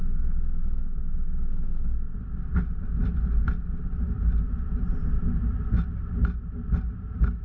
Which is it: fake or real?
real